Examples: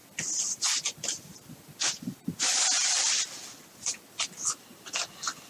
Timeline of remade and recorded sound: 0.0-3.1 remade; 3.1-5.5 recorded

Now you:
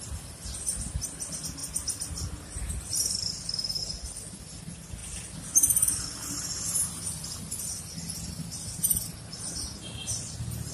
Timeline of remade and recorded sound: 0.0-10.7 recorded

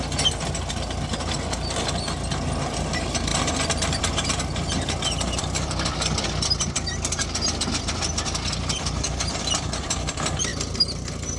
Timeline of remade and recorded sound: 0.0-3.3 recorded; 3.3-4.4 remade; 4.4-11.4 recorded

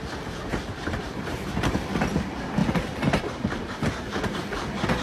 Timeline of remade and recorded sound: 0.0-0.5 recorded; 0.5-1.9 remade; 1.9-2.6 recorded; 2.6-3.6 remade; 3.6-5.0 recorded

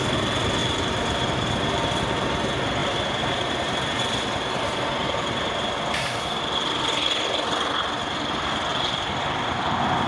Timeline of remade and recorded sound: 0.0-0.6 recorded; 0.6-2.0 remade; 2.0-2.8 recorded; 2.8-6.4 remade; 6.4-8.7 recorded; 8.7-10.1 remade